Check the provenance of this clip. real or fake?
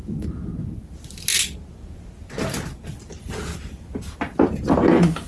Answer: real